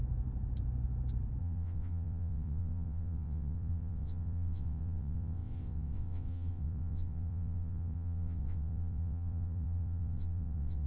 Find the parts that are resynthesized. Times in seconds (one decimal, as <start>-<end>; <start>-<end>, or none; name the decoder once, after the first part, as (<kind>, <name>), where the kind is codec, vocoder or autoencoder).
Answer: 1.4-10.9 (vocoder, WaveNeXt)